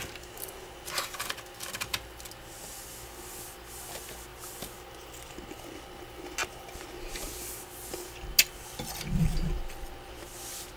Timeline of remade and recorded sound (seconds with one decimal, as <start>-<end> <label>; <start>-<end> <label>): 0.0-10.8 recorded